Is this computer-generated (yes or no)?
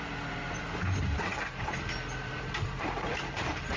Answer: yes